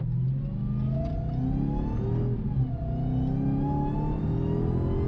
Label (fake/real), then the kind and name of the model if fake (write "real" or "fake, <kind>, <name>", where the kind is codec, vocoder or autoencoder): real